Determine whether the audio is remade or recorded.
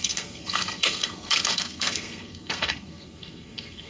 remade